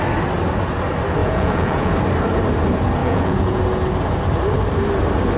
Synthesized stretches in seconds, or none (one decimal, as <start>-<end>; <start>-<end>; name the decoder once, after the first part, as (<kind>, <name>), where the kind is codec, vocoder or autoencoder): 1.2-1.9 (vocoder, Vocos); 3.0-3.6